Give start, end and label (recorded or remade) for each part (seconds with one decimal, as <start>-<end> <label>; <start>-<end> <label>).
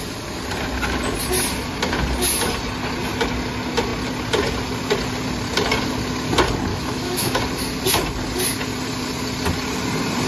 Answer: 0.0-6.7 recorded; 6.7-7.4 remade; 7.4-10.3 recorded